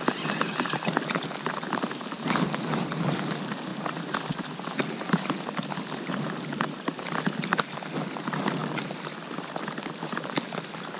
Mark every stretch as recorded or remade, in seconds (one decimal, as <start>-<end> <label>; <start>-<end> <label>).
0.0-11.0 recorded